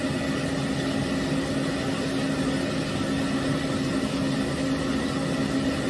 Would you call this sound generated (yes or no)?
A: no